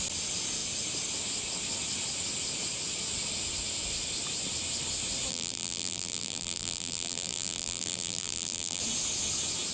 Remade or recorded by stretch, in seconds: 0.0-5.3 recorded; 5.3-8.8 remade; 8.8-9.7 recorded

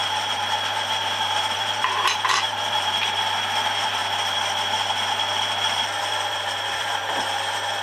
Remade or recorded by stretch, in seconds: 0.0-4.0 remade; 4.0-6.0 recorded; 6.0-7.8 remade

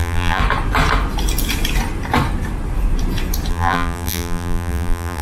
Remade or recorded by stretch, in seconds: 0.0-0.4 remade; 0.4-3.5 recorded; 3.5-5.2 remade